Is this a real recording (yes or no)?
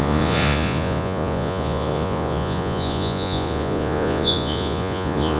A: no